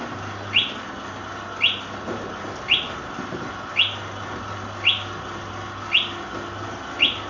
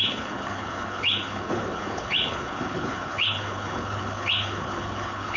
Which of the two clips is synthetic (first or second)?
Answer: second